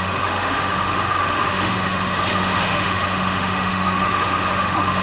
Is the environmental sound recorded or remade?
remade